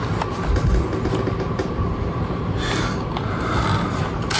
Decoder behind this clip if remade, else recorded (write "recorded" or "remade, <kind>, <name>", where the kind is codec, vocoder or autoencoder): recorded